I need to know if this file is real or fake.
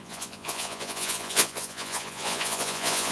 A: fake